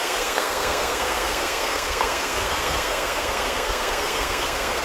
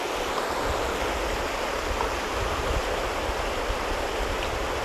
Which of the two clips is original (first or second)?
second